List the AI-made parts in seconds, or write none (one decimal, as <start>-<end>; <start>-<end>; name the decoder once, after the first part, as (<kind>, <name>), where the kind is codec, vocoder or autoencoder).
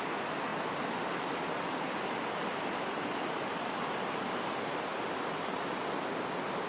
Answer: none